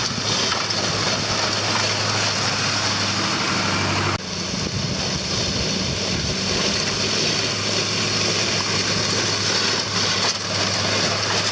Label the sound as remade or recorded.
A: recorded